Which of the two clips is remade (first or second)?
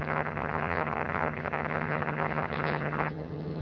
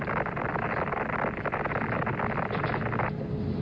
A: first